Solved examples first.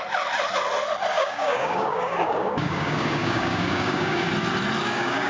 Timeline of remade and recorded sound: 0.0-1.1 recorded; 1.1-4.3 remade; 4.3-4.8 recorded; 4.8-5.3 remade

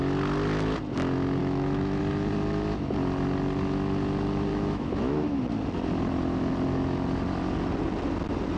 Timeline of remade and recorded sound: 0.0-1.4 recorded; 1.4-2.0 remade; 2.0-4.5 recorded; 4.5-5.4 remade; 5.4-8.6 recorded

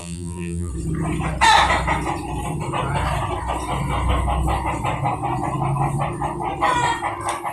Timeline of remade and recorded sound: 0.0-0.7 remade; 0.7-7.5 recorded

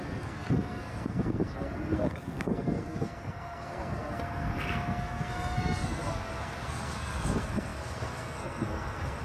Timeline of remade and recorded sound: 0.0-9.2 remade

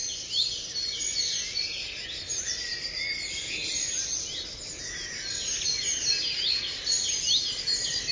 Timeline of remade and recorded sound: 0.0-8.1 recorded